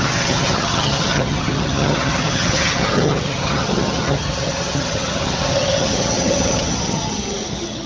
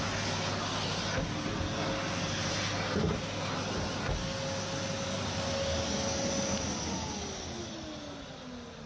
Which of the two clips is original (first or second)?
second